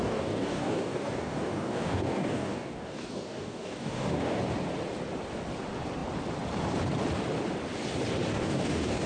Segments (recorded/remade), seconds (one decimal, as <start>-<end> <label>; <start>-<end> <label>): 0.0-4.4 remade; 4.4-8.3 recorded; 8.3-9.1 remade